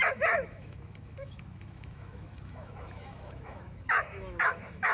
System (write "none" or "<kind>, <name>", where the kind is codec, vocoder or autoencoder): autoencoder, DAC-VAE